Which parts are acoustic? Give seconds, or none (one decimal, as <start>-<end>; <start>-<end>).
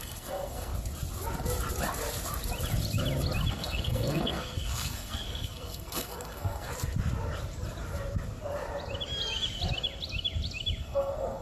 0.7-3.5; 6.7-10.8